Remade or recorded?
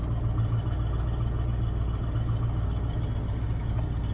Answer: recorded